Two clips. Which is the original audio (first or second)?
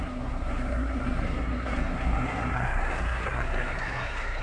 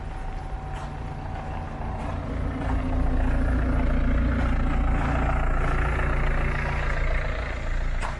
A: second